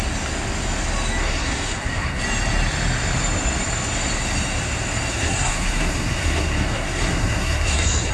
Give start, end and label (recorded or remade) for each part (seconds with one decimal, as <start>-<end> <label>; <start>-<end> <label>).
0.0-1.2 recorded; 1.2-2.2 remade; 2.2-5.1 recorded; 5.1-8.1 remade